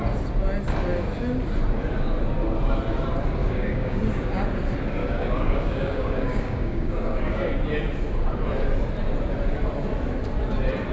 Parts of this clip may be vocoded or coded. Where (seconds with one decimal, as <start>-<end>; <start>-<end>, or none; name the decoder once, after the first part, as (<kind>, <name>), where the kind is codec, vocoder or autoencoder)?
3.4-4.0 (codec, DAC); 5.0-7.5